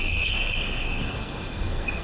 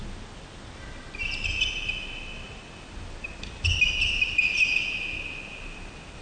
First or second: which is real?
second